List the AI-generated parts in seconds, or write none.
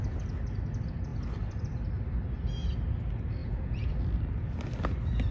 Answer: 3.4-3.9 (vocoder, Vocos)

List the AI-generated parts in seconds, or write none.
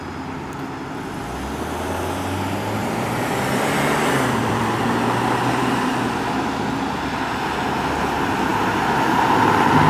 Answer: 2.8-4.8 (vocoder, BigVGAN v2)